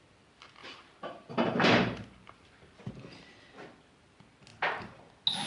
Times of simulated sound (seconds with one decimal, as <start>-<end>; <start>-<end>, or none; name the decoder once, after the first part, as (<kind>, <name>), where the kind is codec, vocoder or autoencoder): 0.6-2.8 (vocoder, BigVGAN v2); 4.5-5.0